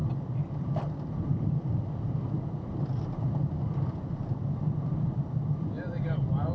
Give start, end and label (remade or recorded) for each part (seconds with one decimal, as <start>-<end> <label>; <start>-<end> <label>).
0.0-6.5 recorded